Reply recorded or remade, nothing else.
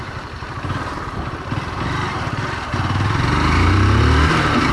remade